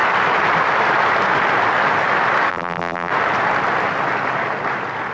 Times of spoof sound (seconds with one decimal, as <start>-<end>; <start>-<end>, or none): 2.5-3.1